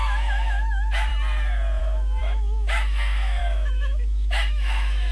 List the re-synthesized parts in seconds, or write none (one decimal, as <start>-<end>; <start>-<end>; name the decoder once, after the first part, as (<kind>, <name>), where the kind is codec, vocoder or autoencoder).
0.0-1.1 (autoencoder, DAC-VAE); 1.8-5.1

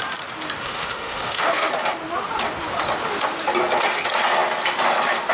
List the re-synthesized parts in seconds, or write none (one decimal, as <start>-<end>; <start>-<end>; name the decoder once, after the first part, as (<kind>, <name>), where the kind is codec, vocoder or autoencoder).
0.6-1.7 (autoencoder, DAC-VAE)

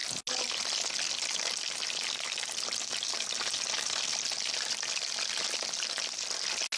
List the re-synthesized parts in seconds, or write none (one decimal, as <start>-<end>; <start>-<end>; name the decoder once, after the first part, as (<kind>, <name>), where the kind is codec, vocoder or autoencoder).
none

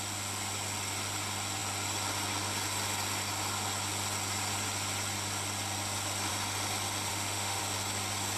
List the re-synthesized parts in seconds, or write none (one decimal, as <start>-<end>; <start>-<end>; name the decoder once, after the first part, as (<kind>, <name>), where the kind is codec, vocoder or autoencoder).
7.1-7.6 (autoencoder, DAC-VAE)

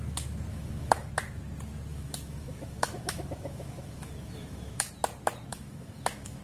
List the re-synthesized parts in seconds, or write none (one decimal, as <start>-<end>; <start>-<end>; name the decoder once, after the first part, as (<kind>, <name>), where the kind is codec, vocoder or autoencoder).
0.5-1.1 (autoencoder, DAC-VAE); 1.9-4.9; 5.5-6.4

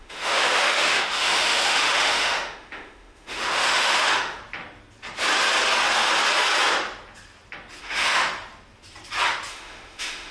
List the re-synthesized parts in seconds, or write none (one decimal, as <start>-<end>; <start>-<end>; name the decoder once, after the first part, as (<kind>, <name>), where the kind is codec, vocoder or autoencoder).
0.0-4.4 (autoencoder, DAC-VAE); 7.8-8.2; 9.5-10.3